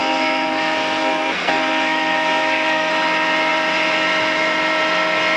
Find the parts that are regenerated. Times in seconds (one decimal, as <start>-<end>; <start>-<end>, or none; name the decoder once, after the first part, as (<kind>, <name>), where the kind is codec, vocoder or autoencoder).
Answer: 0.0-2.9 (codec, SNAC)